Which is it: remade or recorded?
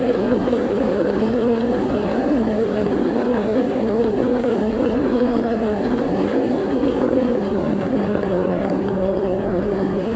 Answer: remade